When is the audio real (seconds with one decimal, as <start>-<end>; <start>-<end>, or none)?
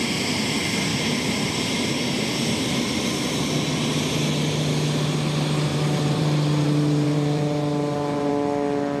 0.0-0.9; 1.9-5.7; 8.3-9.0